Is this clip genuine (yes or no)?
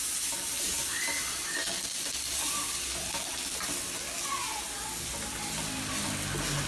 yes